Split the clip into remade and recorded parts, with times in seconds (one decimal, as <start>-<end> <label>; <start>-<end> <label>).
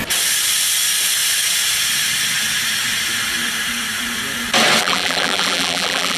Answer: 0.0-4.8 recorded; 4.8-6.2 remade